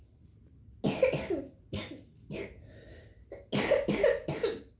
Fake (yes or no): no